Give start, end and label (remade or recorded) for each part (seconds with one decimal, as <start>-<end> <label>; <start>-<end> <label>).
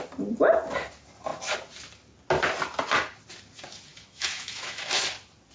0.0-3.9 recorded; 3.9-5.0 remade; 5.0-5.5 recorded